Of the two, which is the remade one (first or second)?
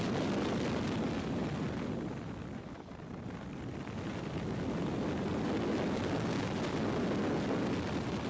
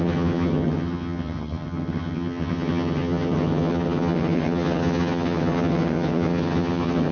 second